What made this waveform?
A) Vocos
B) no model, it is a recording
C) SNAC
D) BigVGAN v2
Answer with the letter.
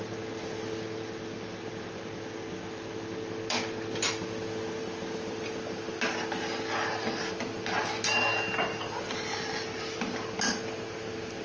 B